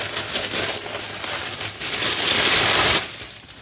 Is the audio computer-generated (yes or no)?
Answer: no